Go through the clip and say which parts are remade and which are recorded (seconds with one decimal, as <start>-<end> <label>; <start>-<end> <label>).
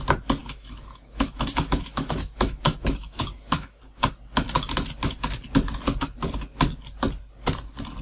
0.0-0.4 recorded; 0.4-3.8 remade; 3.8-8.0 recorded